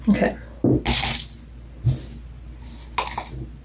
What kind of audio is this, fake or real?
real